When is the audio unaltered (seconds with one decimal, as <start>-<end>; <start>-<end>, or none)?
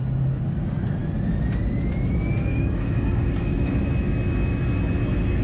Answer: 0.0-2.5; 3.7-5.4